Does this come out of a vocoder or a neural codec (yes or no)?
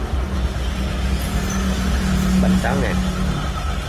no